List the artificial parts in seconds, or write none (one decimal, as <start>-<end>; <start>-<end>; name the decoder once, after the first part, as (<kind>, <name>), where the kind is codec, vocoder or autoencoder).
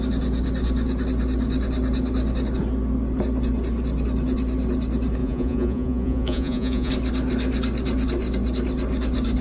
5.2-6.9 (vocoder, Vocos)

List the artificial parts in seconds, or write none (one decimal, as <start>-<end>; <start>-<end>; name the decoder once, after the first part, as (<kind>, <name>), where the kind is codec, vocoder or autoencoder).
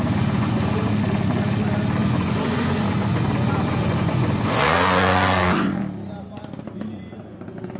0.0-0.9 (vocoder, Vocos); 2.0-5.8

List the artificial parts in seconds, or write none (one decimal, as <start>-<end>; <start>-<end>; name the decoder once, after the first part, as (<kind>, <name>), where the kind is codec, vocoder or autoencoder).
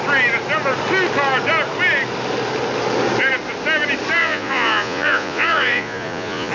4.2-6.5 (vocoder, Vocos)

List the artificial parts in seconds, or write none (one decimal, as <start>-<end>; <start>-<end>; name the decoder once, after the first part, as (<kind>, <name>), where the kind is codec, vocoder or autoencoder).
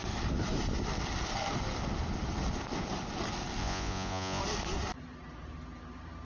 3.6-4.4 (vocoder, Vocos)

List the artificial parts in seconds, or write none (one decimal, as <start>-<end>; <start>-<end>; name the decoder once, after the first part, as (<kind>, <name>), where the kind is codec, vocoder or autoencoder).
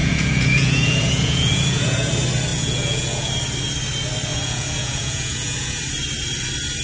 0.0-2.1 (vocoder, Vocos); 2.5-3.3; 4.3-5.8